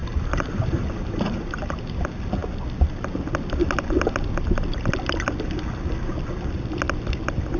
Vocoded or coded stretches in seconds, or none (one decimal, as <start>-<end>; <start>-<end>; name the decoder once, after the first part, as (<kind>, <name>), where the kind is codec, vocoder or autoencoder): 0.0-1.4 (vocoder, BigVGAN v2)